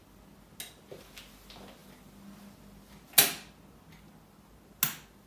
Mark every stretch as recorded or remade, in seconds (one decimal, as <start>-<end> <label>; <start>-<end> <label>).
0.0-5.3 recorded